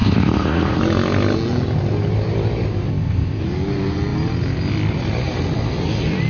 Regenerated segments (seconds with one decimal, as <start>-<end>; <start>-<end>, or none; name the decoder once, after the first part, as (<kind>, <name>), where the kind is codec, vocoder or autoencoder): 0.0-0.8 (codec, ZipCodec); 2.9-3.4

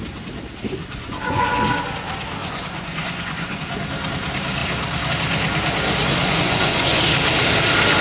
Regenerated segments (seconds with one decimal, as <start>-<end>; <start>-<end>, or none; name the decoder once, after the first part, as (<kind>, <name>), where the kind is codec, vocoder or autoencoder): 0.8-1.5 (vocoder, Vocos); 2.4-3.6; 6.2-7.0

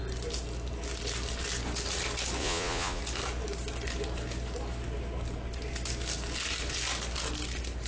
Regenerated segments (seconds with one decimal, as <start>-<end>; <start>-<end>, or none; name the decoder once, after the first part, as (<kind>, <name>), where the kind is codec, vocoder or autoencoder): 2.4-3.0 (vocoder, Vocos)

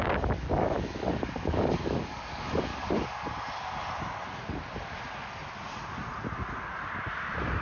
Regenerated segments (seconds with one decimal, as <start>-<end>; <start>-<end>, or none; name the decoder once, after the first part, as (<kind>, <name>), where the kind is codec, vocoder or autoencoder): 0.0-2.7 (codec, DAC)